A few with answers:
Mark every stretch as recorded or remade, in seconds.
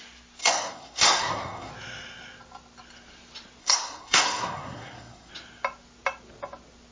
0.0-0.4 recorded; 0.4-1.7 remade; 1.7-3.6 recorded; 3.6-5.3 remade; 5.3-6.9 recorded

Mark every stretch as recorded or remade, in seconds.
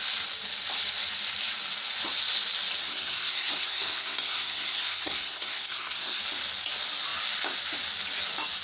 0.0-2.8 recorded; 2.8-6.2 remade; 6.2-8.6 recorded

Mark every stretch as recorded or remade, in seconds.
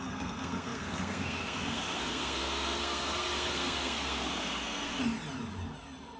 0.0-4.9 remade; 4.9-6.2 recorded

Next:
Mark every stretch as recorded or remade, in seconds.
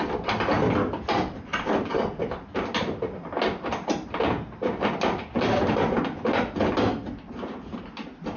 0.0-8.4 recorded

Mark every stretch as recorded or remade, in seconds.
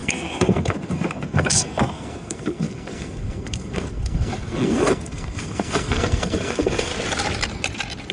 0.0-6.9 remade; 6.9-8.1 recorded